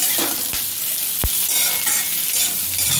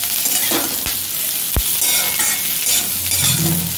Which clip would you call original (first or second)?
second